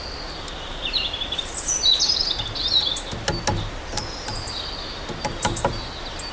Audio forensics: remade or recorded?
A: recorded